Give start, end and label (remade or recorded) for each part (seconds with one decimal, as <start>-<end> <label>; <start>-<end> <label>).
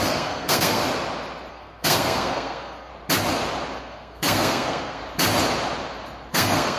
0.0-0.8 remade; 0.8-1.5 recorded; 1.5-2.9 remade; 2.9-3.8 recorded; 3.8-5.0 remade; 5.0-6.3 recorded; 6.3-6.8 remade